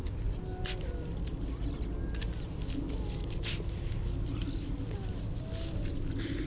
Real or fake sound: real